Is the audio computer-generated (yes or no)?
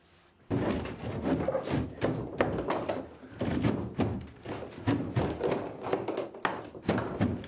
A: no